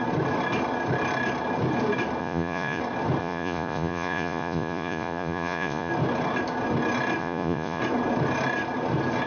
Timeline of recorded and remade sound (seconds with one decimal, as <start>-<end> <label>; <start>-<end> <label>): 0.0-2.2 recorded; 2.2-2.8 remade; 2.8-3.2 recorded; 3.2-5.9 remade; 5.9-7.2 recorded; 7.2-7.8 remade; 7.8-9.3 recorded